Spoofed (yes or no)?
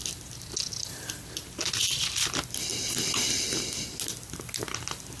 no